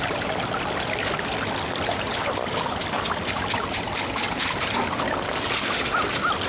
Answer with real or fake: real